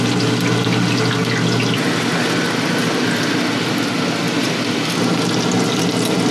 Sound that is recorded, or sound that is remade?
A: recorded